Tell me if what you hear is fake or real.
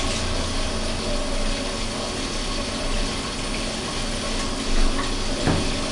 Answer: real